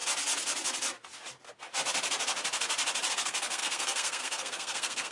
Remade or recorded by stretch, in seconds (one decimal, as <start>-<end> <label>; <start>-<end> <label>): 0.0-3.1 recorded; 3.1-5.1 remade